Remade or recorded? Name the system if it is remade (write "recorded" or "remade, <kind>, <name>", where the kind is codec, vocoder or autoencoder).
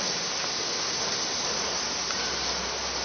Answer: recorded